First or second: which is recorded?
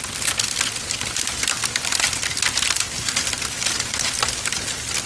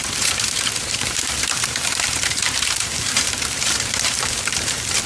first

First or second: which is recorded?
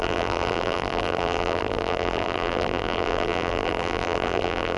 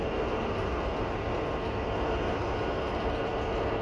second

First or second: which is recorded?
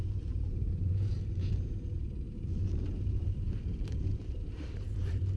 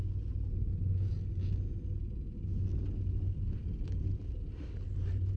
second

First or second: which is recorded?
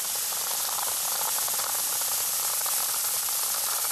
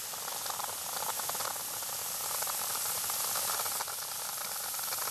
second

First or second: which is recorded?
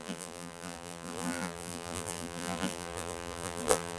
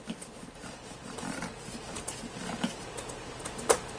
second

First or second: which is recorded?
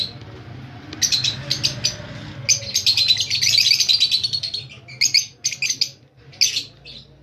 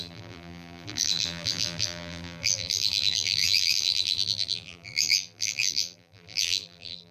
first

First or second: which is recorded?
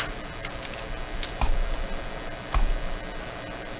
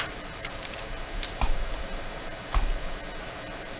first